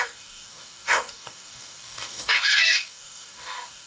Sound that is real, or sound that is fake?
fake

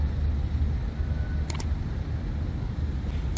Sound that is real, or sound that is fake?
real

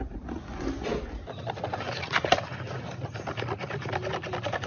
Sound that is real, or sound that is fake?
real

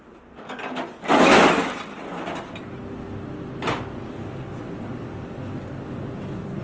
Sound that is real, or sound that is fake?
real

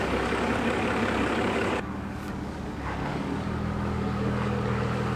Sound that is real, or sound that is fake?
fake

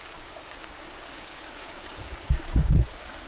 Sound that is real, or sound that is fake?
fake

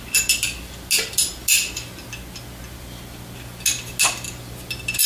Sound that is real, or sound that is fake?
real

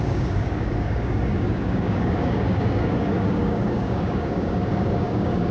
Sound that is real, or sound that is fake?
fake